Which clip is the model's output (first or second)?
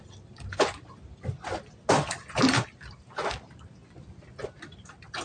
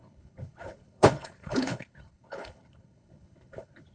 second